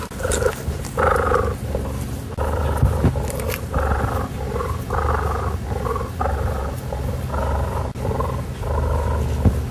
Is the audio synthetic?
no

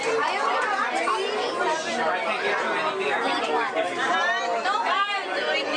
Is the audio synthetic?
no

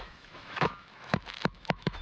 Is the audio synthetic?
yes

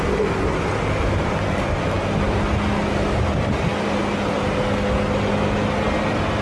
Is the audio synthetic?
no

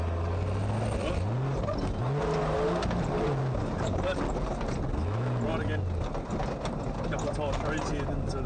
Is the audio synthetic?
no